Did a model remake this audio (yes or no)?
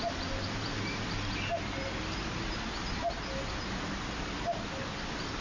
no